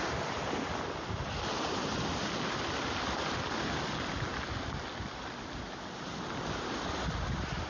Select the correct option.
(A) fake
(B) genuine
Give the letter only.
B